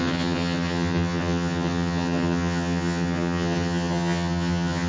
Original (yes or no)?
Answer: no